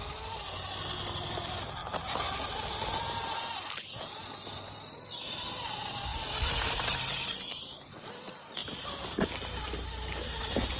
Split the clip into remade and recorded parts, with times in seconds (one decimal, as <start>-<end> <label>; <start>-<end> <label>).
0.0-6.1 recorded; 6.1-7.0 remade; 7.0-8.6 recorded; 8.6-9.2 remade; 9.2-10.8 recorded